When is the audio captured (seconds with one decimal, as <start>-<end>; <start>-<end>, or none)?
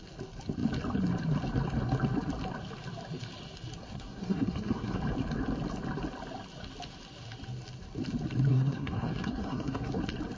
0.0-3.8; 5.0-8.5; 9.9-10.4